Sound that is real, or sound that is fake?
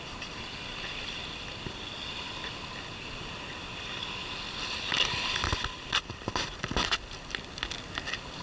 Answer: real